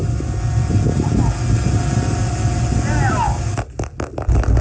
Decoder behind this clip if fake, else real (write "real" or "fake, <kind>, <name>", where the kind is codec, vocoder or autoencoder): real